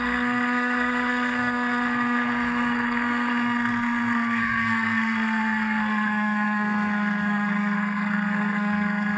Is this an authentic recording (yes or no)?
no